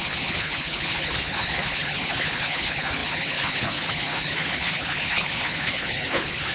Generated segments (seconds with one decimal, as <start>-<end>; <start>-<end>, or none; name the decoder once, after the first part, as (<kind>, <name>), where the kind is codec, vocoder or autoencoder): 0.0-6.5 (codec, HILCodec)